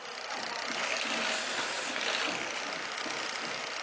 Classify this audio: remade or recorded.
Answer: recorded